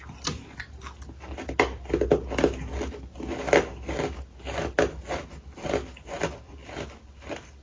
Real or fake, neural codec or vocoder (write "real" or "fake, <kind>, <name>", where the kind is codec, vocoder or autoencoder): real